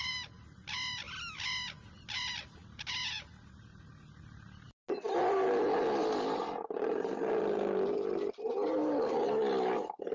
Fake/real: real